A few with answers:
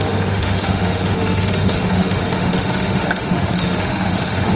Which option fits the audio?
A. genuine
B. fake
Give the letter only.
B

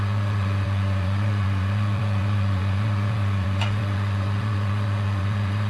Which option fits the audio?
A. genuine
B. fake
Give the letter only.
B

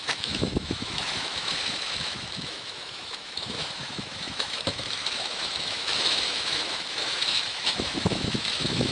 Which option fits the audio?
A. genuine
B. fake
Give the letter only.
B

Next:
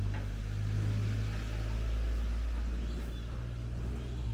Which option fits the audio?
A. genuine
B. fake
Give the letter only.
A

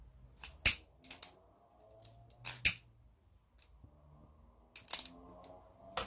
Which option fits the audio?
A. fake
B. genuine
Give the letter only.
B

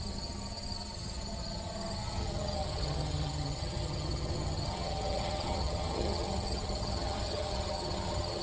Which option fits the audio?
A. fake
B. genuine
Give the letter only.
A